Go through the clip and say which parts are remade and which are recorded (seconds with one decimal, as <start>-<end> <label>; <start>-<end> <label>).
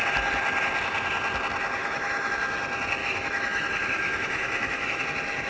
0.0-1.8 recorded; 1.8-2.3 remade; 2.3-3.0 recorded; 3.0-5.0 remade; 5.0-5.5 recorded